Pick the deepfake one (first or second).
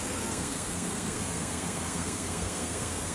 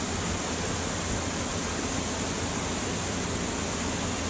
first